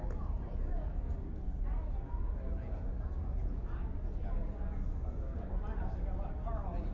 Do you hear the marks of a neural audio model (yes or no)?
no